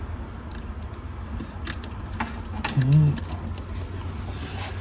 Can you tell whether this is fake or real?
real